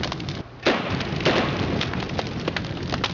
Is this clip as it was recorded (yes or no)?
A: yes